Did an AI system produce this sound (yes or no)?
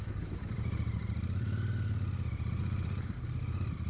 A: yes